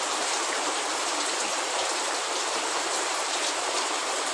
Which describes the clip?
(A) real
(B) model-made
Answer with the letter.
B